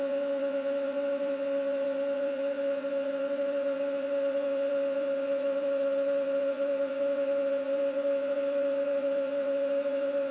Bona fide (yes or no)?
no